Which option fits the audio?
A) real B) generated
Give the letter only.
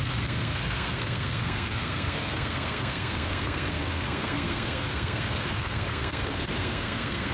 B